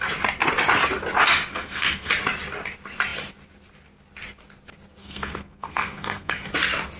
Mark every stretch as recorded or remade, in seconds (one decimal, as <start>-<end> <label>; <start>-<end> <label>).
0.0-1.5 recorded; 1.5-2.1 remade; 2.1-5.0 recorded; 5.0-6.5 remade; 6.5-7.0 recorded